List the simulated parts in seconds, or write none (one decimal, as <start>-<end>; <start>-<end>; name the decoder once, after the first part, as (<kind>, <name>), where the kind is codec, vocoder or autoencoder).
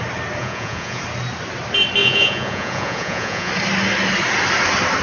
0.4-1.0 (vocoder, Vocos); 2.0-3.5